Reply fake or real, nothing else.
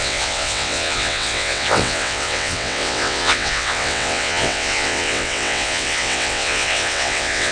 fake